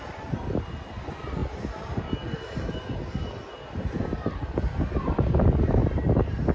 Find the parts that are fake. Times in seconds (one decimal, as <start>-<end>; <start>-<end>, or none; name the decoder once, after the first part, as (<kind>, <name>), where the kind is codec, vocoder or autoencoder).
none